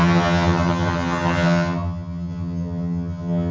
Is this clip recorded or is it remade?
remade